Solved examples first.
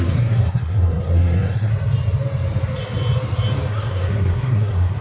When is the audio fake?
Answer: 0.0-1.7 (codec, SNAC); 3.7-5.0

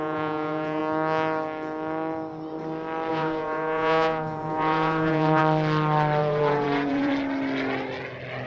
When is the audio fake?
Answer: 0.0-0.8 (vocoder, Vocos); 3.1-5.4; 6.2-7.1

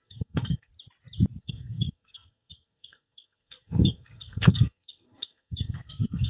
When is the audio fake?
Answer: 0.0-0.7 (codec, SNAC); 1.4-6.3

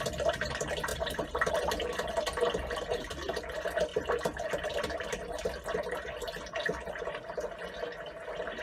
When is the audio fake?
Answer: 0.9-1.5 (vocoder, BigVGAN v2)

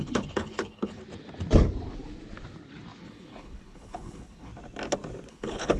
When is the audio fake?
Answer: 0.0-1.0 (codec, HILCodec); 3.0-4.5; 5.3-5.8